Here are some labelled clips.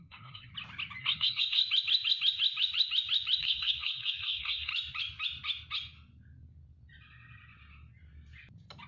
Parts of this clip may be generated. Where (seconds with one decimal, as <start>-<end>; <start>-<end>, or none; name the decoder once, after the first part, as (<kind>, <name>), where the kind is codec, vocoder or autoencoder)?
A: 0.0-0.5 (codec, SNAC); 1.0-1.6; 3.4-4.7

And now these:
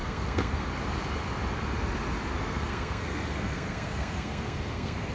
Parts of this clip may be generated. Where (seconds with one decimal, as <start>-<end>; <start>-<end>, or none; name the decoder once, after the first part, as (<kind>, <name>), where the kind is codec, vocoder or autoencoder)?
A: 0.0-0.7 (codec, SNAC); 2.4-5.1

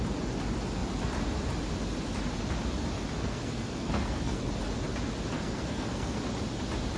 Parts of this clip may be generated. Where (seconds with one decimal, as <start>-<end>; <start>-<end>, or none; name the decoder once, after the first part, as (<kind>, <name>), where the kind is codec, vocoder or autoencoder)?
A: 3.2-4.5 (codec, SNAC); 5.3-6.2

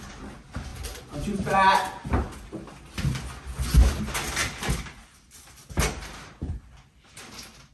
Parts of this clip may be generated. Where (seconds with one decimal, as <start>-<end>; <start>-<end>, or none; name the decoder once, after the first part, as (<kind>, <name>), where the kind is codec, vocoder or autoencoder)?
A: none